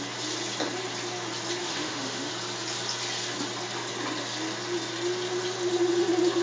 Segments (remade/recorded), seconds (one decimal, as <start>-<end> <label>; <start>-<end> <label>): 0.0-1.6 recorded; 1.6-2.3 remade; 2.3-6.4 recorded